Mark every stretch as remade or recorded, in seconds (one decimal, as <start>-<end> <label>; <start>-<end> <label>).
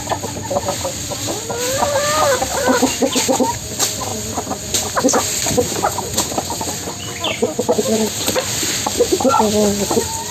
0.0-10.3 recorded